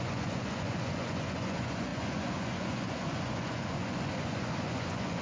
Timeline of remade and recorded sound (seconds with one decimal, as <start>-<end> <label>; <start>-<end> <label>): 0.0-5.2 remade